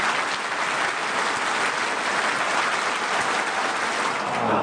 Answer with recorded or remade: recorded